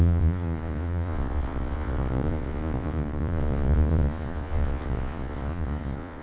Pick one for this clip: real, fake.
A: fake